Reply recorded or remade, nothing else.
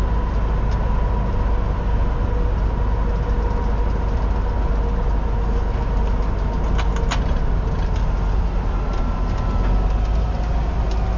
recorded